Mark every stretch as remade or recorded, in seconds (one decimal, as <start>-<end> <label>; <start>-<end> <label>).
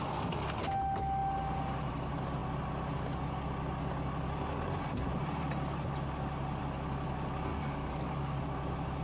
0.0-7.5 recorded; 7.5-8.4 remade; 8.4-9.0 recorded